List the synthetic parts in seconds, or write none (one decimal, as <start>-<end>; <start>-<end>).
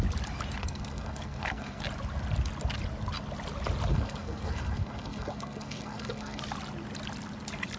0.6-1.8; 3.9-6.4